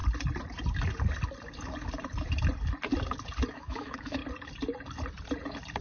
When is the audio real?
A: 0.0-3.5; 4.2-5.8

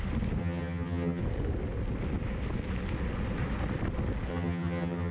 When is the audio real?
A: 0.0-0.4; 1.2-4.3